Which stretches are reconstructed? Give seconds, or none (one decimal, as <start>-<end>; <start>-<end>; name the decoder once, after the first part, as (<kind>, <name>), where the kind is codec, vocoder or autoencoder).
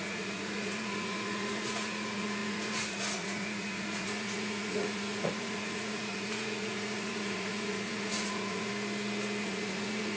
0.0-8.7 (vocoder, Vocos); 9.4-10.2